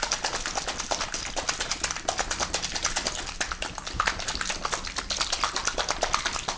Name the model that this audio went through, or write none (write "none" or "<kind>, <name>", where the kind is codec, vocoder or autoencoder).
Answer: none